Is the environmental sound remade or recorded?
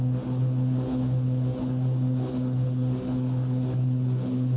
remade